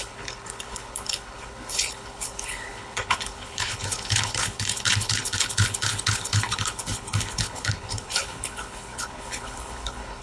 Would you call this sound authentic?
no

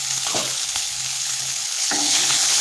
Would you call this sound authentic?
no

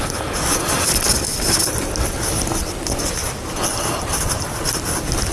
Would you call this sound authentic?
yes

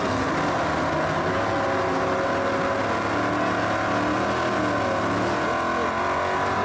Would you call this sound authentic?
yes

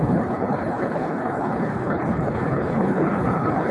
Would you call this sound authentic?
no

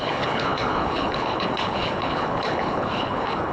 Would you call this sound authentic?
no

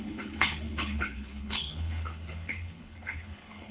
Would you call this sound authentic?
no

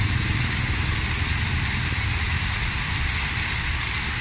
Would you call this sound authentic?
yes